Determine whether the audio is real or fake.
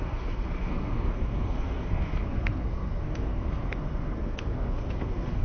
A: fake